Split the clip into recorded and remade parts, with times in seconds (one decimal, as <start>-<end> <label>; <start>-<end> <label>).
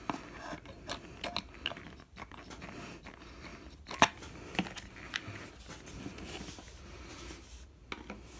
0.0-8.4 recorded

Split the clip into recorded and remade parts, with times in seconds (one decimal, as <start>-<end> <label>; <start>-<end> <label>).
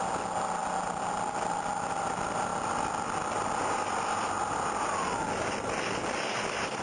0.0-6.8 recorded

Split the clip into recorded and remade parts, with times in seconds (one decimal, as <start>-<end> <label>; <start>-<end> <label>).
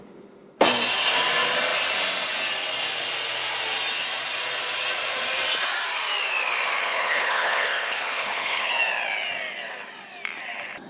0.0-6.8 recorded; 6.8-8.7 remade; 8.7-10.9 recorded